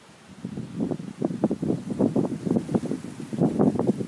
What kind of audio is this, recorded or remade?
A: recorded